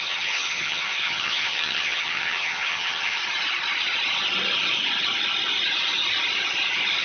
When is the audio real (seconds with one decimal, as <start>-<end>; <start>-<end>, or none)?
3.2-7.0